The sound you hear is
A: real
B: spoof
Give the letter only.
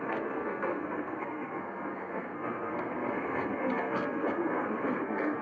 B